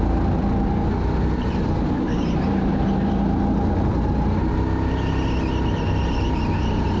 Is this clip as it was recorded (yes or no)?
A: yes